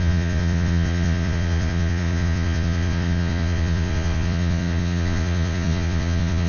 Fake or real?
fake